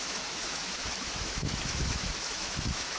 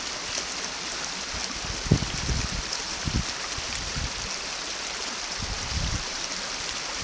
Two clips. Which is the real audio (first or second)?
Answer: second